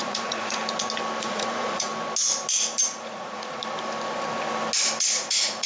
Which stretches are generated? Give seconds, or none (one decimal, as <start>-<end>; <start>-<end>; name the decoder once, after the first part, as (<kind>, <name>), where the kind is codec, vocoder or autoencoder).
0.0-0.6 (vocoder, Vocos); 1.2-1.9; 3.0-3.6; 5.0-5.7